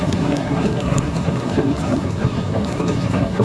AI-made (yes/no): yes